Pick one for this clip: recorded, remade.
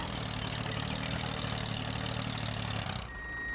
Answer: recorded